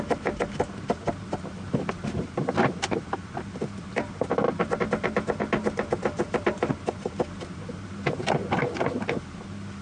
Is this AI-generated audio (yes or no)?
no